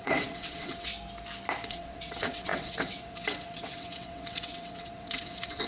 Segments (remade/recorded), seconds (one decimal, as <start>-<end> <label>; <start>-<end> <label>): 0.0-0.9 remade; 0.9-1.7 recorded; 1.7-5.7 remade